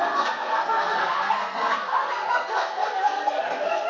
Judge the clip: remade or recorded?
remade